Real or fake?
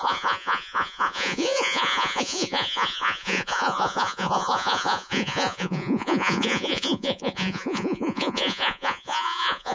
fake